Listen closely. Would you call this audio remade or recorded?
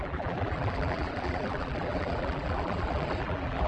remade